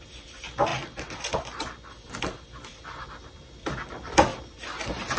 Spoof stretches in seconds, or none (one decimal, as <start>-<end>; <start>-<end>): 0.0-4.3